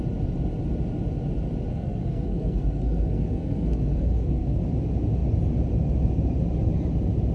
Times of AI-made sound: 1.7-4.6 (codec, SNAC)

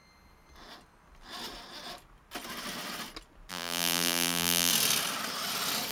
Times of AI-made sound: 3.5-4.7 (vocoder, BigVGAN v2)

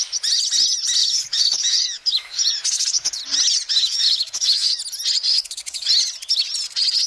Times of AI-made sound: 1.0-3.2 (autoencoder, DAC-VAE); 3.7-4.8; 5.3-5.9